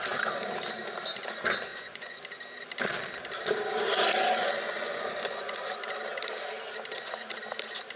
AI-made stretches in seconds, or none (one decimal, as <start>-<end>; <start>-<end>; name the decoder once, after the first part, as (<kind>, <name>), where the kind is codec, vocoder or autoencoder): 1.7-2.2 (vocoder, Vocos); 4.4-5.6